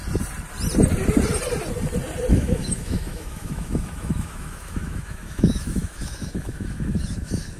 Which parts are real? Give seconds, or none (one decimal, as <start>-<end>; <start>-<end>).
0.0-2.3

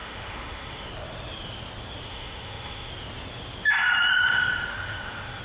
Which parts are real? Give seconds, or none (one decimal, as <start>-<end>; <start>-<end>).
0.9-2.1; 2.9-4.7

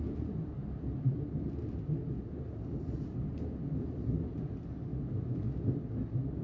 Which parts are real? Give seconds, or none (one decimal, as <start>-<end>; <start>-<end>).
0.0-4.9; 5.6-6.4